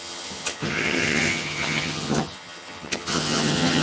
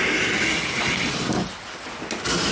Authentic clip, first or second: second